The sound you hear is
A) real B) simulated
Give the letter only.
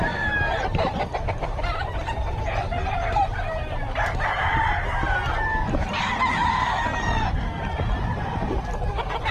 B